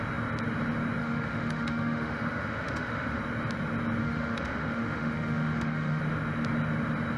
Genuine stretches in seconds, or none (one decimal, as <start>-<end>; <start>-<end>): 0.0-1.0; 3.2-4.0; 6.0-7.2